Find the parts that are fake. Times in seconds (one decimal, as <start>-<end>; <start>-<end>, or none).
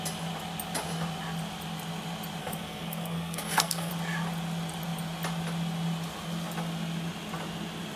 2.4-3.9